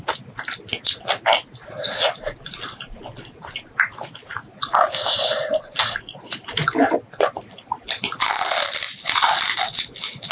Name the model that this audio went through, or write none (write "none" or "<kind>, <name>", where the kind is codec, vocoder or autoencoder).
none